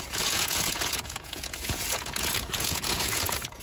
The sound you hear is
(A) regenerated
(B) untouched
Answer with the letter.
A